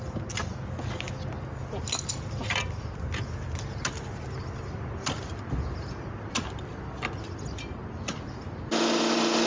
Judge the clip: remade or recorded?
recorded